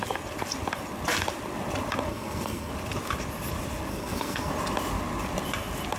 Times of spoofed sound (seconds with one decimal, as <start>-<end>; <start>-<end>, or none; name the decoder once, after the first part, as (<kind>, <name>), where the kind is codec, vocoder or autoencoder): 2.1-2.7 (codec, SNAC); 3.9-4.5